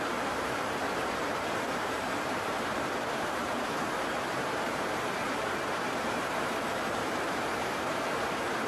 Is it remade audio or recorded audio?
remade